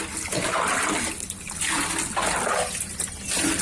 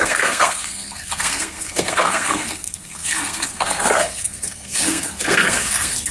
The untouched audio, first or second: first